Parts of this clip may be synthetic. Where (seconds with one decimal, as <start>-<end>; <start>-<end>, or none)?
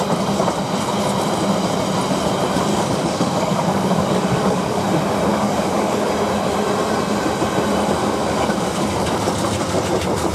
2.7-4.8; 5.3-6.1; 8.0-9.2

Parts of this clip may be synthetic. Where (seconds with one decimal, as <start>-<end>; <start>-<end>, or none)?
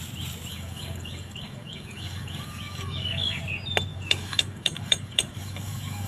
0.5-3.4; 3.9-6.1